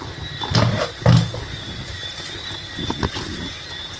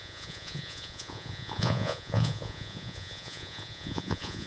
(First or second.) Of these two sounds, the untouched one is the first